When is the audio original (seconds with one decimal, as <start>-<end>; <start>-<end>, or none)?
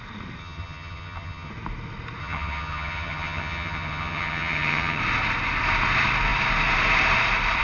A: 0.0-0.4; 1.5-2.2; 5.0-7.6